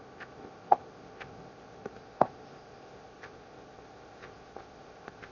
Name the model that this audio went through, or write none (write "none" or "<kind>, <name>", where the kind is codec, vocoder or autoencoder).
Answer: codec, ZipCodec